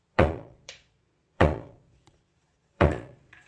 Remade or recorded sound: remade